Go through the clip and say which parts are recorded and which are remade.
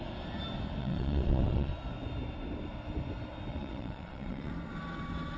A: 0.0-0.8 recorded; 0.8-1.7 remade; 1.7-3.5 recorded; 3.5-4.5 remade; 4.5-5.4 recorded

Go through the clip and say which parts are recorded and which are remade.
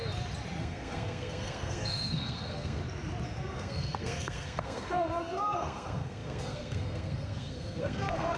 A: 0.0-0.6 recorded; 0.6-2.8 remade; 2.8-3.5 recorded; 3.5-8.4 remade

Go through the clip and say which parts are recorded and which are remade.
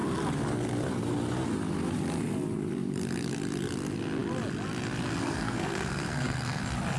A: 0.0-5.2 recorded; 5.2-6.6 remade; 6.6-7.0 recorded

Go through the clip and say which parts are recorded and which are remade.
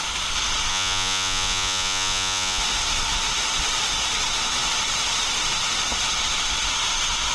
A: 0.0-0.7 recorded; 0.7-2.6 remade; 2.6-7.3 recorded